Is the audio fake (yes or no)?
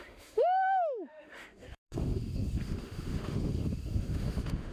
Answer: yes